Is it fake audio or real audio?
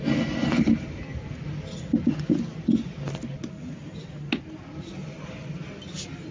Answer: real